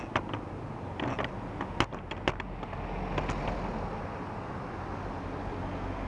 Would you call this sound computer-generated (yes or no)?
no